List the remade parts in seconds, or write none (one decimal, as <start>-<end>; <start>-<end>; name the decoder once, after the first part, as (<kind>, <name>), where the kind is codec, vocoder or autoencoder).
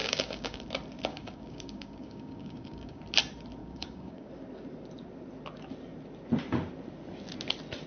0.0-0.6 (codec, DAC); 1.1-3.0; 3.6-4.3